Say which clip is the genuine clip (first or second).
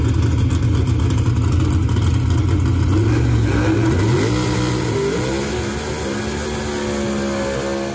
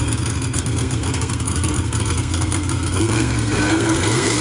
first